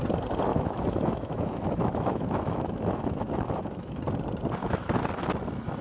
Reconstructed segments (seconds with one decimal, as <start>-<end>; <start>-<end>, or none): 0.5-4.0; 4.6-5.1